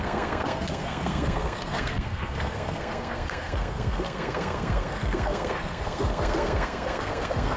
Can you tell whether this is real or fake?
fake